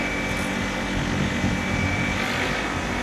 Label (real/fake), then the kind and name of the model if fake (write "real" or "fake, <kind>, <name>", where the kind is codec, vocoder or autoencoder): real